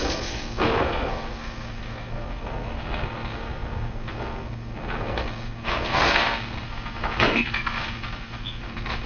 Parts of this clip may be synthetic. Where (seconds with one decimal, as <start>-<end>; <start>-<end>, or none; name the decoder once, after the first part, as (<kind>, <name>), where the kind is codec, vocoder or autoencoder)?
0.0-9.1 (codec, SNAC)